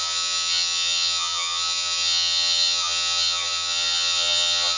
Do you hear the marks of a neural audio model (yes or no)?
yes